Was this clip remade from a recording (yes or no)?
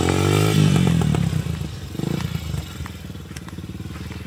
no